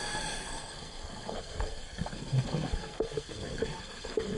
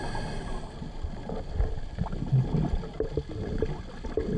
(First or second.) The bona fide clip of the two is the second